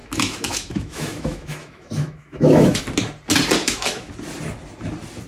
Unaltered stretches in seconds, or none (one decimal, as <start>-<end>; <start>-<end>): 2.8-3.6; 4.1-5.3